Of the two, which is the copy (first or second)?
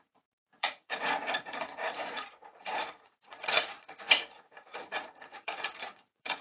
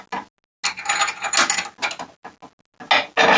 first